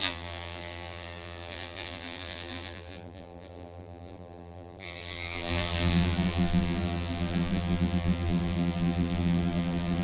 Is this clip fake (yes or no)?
yes